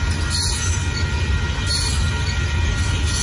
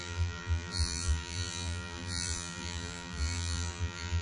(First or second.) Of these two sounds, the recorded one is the first